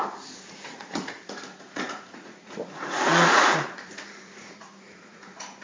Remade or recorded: remade